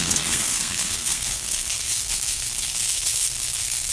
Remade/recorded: remade